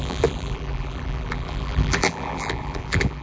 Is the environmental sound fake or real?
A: fake